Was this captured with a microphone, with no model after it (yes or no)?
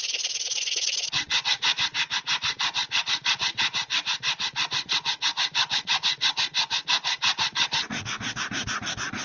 no